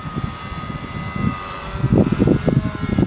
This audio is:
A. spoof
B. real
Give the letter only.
B